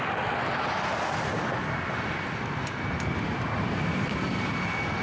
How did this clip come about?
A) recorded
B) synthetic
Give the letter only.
A